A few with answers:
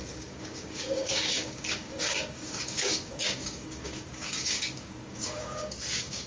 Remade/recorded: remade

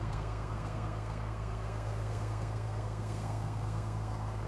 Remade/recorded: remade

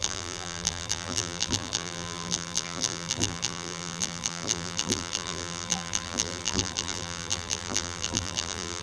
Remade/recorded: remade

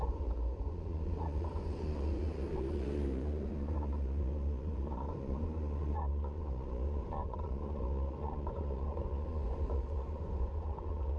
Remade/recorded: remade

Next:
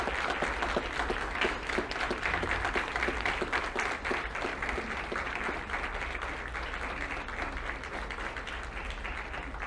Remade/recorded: recorded